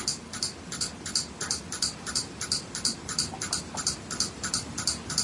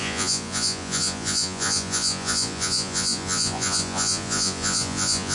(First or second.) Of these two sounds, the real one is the first